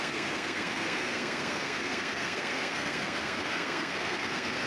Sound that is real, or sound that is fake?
fake